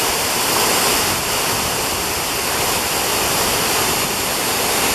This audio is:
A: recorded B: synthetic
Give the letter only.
B